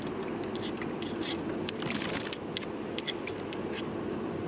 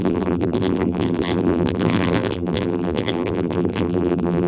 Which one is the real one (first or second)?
first